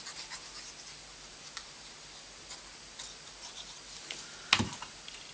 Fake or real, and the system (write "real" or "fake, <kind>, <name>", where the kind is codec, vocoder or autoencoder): real